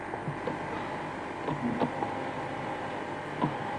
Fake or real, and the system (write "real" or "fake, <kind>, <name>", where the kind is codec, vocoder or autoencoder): real